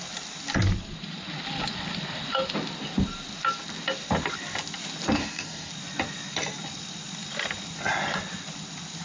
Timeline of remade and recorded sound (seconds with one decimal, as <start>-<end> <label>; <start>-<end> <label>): 0.0-5.2 recorded; 5.2-5.7 remade; 5.7-9.0 recorded